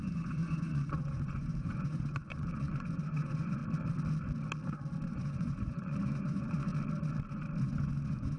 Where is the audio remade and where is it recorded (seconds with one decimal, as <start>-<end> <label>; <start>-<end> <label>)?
0.0-3.6 remade; 3.6-5.1 recorded; 5.1-6.7 remade; 6.7-7.6 recorded; 7.6-8.4 remade